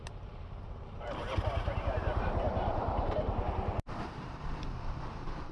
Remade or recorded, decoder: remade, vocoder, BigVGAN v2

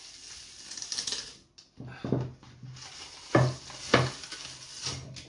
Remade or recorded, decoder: recorded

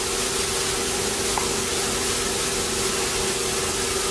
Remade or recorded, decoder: recorded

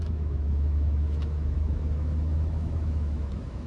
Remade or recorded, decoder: remade, autoencoder, DAC-VAE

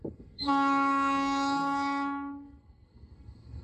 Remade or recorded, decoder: remade, codec, SNAC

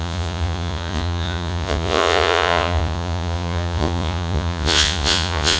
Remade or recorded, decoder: remade, vocoder, Vocos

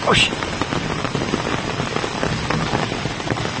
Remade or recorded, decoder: recorded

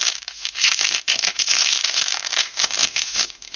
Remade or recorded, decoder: remade, autoencoder, DAC-VAE